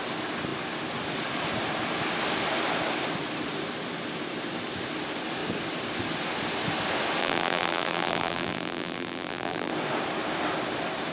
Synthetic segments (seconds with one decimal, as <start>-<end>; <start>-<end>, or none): 7.2-9.7